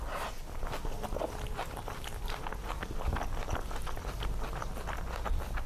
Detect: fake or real real